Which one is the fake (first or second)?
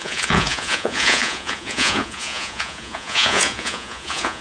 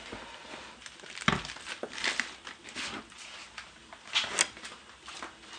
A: first